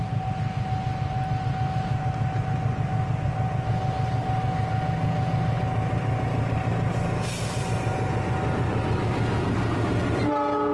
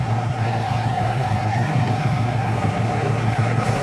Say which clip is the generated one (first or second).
second